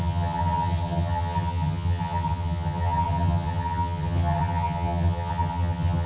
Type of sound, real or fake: fake